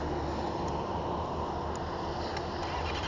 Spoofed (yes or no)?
no